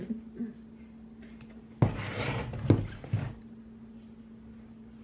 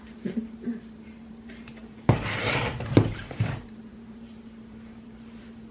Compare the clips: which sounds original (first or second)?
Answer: first